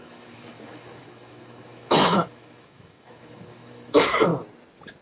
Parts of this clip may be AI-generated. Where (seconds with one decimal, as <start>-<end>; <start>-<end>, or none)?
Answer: 0.0-4.3